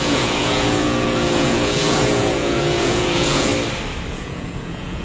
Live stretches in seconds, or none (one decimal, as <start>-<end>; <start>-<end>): 3.5-4.1